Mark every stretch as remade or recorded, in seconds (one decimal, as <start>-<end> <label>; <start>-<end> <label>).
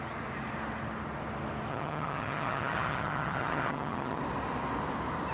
0.0-1.7 recorded; 1.7-4.2 remade; 4.2-5.3 recorded